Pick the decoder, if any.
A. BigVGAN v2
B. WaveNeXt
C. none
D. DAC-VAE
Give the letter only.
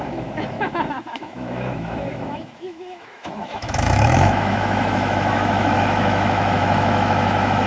D